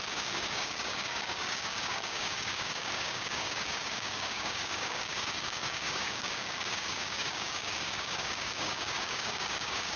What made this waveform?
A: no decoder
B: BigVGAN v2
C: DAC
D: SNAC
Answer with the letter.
C